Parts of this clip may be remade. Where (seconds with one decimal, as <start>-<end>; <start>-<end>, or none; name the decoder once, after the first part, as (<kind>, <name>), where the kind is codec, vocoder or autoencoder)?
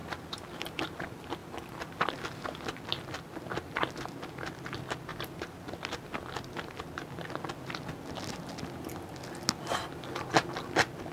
0.0-0.8 (vocoder, BigVGAN v2); 1.4-2.1; 5.1-7.0